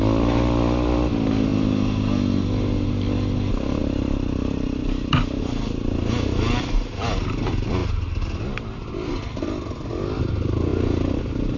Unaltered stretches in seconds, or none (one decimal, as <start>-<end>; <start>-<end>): 0.0-11.6